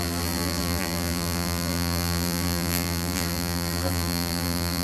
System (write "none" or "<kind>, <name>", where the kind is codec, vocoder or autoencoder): vocoder, BigVGAN v2